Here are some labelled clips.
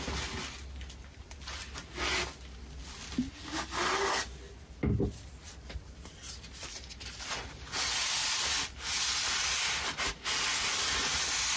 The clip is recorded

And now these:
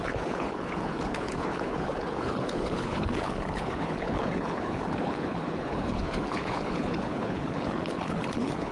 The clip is remade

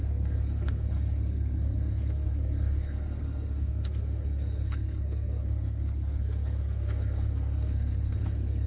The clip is remade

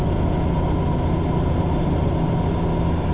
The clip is recorded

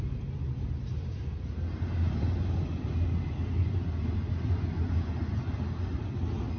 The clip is recorded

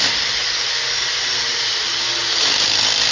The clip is recorded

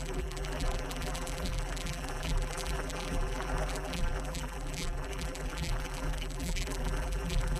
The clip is remade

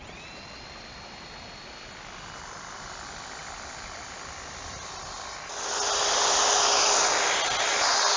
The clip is recorded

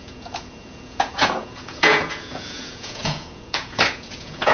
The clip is remade